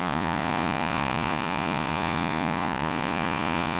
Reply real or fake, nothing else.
fake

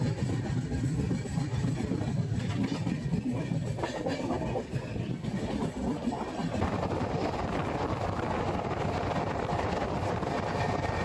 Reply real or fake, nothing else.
real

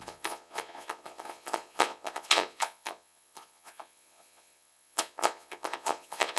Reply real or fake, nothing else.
fake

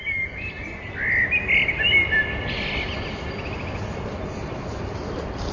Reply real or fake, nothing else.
real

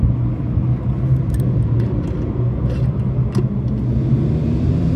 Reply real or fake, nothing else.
real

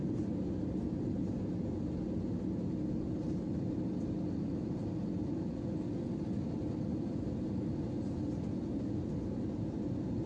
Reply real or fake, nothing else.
real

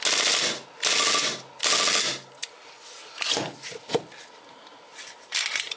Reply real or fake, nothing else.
real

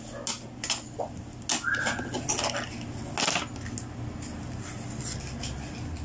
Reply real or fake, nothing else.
real